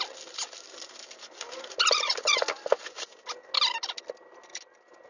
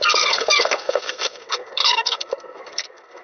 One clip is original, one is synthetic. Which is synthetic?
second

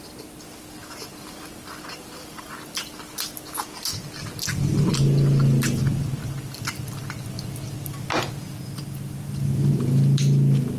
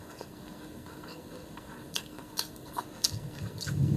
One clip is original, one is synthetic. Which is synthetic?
second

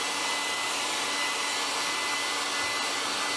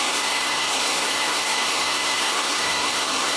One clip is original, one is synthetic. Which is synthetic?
second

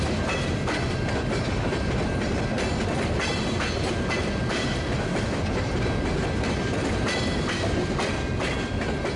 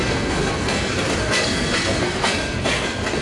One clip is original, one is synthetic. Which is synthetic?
second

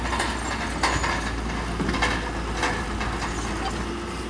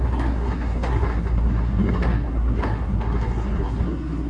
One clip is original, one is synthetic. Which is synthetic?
second